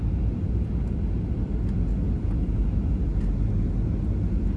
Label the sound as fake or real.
real